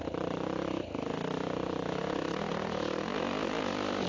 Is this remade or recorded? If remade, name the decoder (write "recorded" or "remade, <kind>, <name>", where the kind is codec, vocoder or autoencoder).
recorded